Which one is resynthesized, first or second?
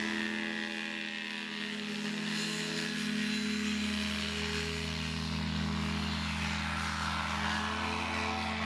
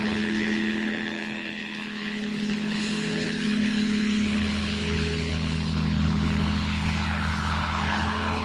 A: second